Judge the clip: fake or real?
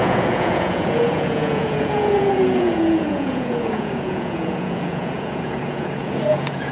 fake